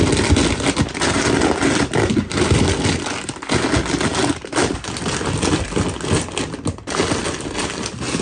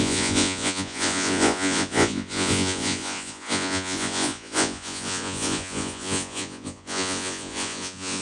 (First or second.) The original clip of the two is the first